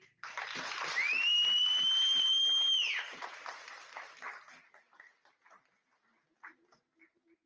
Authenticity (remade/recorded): remade